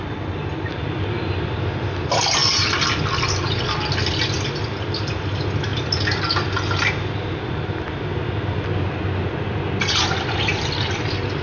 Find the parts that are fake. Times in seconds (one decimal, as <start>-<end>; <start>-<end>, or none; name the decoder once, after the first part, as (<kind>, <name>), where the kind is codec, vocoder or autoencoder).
none